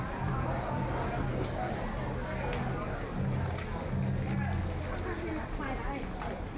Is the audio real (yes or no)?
yes